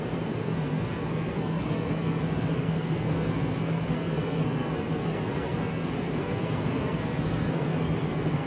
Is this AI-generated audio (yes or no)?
yes